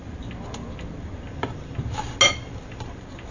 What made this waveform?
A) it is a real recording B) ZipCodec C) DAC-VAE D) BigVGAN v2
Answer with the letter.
A